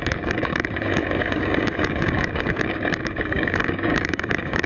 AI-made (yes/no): yes